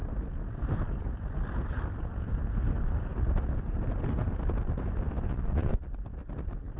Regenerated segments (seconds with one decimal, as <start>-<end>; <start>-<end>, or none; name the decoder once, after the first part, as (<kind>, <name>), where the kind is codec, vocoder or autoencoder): 5.3-6.0 (vocoder, Vocos)